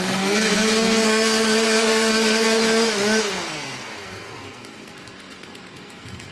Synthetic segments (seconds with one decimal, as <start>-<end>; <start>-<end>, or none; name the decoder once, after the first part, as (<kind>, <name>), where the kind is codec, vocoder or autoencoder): 0.0-2.6 (codec, SNAC); 3.2-6.3